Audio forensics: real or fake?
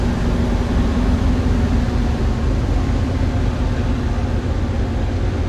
real